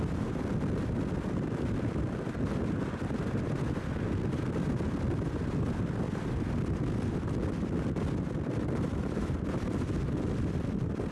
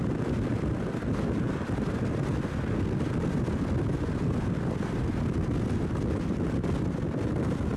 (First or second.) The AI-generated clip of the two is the first